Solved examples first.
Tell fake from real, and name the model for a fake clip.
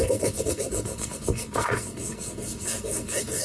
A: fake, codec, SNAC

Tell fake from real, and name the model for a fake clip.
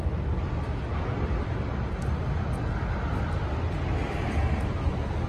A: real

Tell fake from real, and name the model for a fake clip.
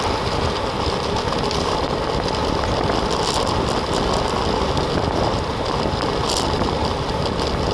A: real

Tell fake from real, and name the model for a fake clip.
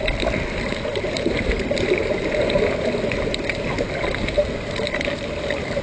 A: real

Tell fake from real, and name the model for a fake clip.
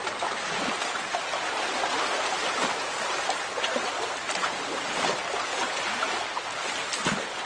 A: real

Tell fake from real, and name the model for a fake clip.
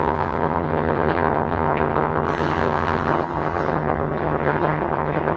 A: fake, vocoder, HiFi-GAN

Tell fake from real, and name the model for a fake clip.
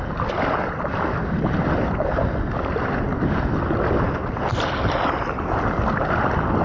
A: real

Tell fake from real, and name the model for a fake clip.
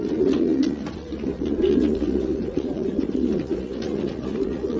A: fake, vocoder, Vocos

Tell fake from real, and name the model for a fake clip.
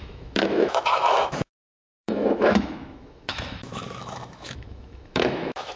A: fake, autoencoder, DAC-VAE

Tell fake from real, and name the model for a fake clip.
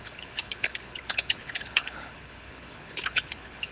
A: fake, codec, HILCodec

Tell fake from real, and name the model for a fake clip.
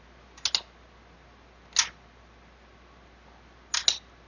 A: real